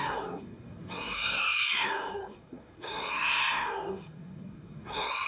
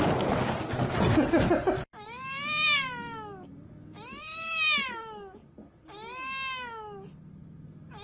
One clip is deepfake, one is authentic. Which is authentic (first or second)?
second